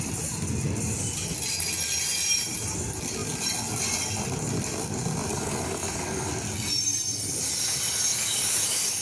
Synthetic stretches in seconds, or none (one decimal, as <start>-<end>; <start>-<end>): 5.3-6.3; 8.1-9.0